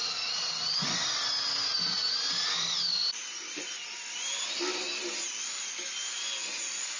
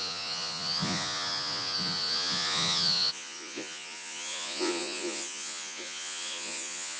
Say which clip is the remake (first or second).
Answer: second